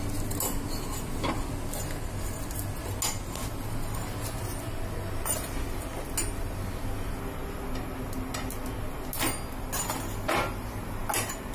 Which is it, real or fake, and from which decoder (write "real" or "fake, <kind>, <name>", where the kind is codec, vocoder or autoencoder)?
real